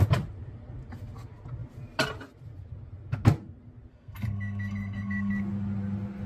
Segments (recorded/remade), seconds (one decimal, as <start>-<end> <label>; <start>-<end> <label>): 0.0-3.9 recorded; 3.9-5.3 remade; 5.3-6.3 recorded